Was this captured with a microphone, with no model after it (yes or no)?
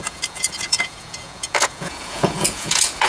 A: no